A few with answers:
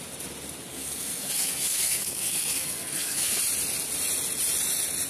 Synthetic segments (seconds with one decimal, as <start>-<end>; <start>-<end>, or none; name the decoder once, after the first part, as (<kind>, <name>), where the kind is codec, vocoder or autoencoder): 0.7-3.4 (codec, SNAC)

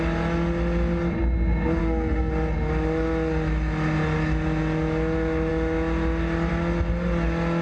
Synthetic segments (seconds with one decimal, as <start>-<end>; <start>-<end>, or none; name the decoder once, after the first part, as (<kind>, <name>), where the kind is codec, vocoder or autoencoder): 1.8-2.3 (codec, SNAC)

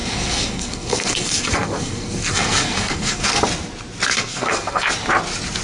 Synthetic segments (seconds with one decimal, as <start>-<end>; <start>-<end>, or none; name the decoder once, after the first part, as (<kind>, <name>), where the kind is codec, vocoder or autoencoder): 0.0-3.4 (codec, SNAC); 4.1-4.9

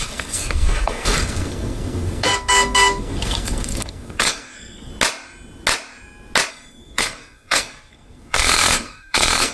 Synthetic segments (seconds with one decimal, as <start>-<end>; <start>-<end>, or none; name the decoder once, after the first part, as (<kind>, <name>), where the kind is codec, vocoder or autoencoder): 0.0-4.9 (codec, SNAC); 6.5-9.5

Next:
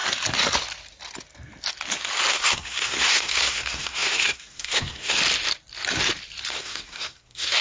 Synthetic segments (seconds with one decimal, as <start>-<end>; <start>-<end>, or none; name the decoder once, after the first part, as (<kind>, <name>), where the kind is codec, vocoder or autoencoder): 2.3-5.2 (codec, SNAC); 6.5-7.6

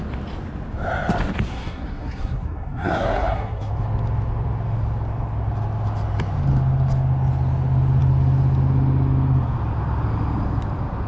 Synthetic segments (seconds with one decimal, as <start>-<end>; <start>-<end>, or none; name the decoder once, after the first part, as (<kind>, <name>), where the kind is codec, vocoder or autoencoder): 1.5-3.7 (codec, SNAC)